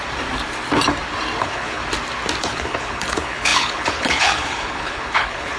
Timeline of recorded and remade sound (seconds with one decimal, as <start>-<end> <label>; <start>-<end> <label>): 0.0-1.4 recorded; 1.4-1.8 remade; 1.8-2.4 recorded; 2.4-5.6 remade

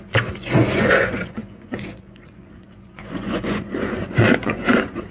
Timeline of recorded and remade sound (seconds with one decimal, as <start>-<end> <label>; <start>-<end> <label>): 0.0-5.1 remade